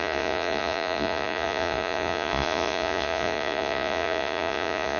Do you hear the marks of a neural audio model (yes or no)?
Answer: yes